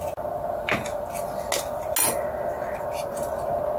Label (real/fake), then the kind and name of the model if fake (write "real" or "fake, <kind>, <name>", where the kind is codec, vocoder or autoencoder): real